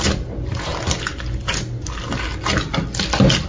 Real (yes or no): yes